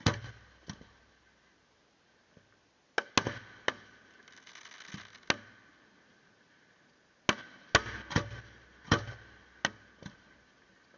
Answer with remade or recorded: recorded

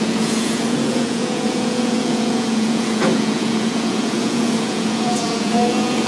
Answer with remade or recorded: remade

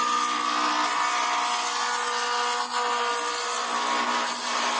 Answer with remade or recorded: recorded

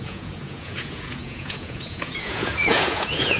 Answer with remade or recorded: remade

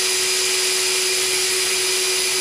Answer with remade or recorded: recorded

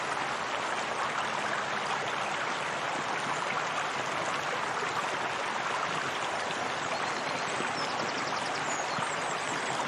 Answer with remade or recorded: recorded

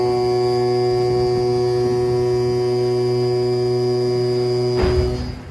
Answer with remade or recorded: recorded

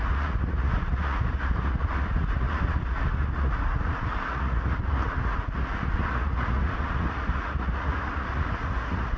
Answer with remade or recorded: remade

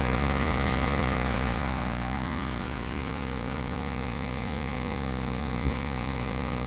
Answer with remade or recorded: remade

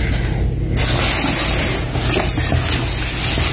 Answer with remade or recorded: recorded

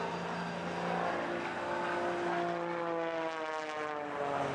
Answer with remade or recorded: recorded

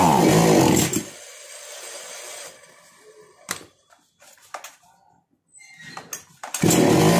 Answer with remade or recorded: recorded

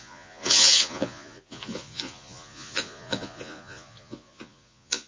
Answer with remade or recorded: remade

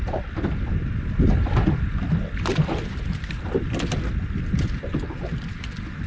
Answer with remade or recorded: recorded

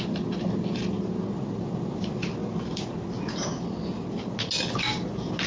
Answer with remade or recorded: recorded